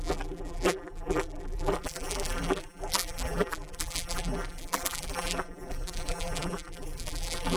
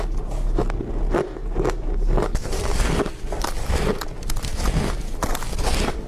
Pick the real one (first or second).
second